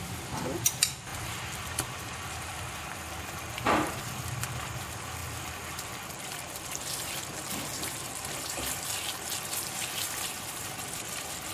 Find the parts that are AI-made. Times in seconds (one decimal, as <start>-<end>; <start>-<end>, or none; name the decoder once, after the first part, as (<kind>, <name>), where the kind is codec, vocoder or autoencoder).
0.0-1.1 (vocoder, BigVGAN v2); 3.5-11.5